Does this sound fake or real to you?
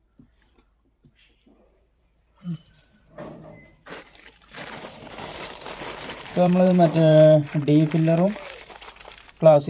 fake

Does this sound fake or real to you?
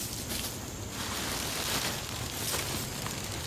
real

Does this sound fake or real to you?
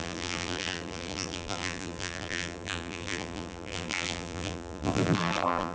fake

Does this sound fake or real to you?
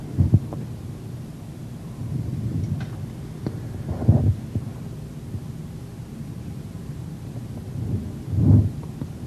real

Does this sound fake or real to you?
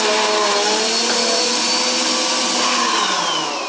real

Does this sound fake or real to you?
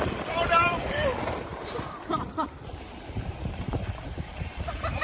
fake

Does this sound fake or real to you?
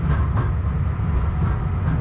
real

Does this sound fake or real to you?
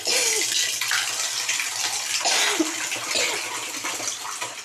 real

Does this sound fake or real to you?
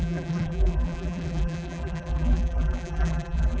fake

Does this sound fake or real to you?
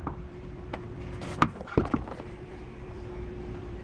fake